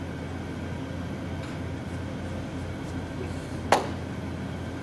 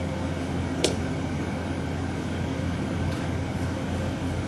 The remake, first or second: second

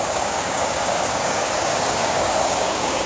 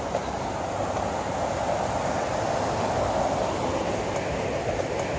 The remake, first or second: first